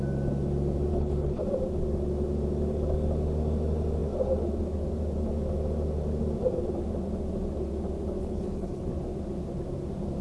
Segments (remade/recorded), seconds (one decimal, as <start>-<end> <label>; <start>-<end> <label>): 0.0-0.9 recorded; 0.9-1.4 remade; 1.4-8.2 recorded; 8.2-8.8 remade; 8.8-10.2 recorded